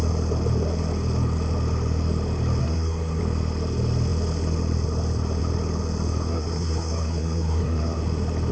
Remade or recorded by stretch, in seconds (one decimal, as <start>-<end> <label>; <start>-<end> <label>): 0.0-2.6 recorded; 2.6-3.2 remade; 3.2-6.3 recorded; 6.3-8.0 remade; 8.0-8.5 recorded